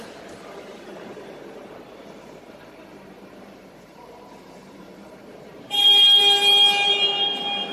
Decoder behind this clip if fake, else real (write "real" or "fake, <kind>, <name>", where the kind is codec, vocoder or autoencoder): fake, vocoder, BigVGAN v2